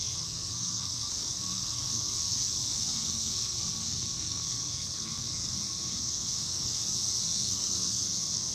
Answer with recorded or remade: remade